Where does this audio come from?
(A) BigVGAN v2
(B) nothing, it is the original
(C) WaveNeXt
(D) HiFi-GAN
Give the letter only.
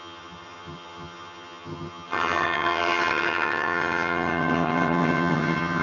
D